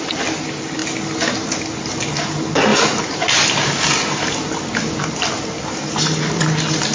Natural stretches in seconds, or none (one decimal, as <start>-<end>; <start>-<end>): 0.0-6.9